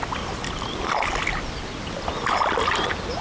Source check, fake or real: real